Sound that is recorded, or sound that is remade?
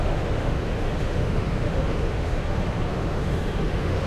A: remade